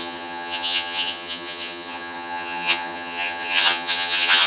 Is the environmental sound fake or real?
fake